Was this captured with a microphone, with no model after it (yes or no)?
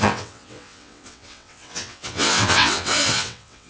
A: no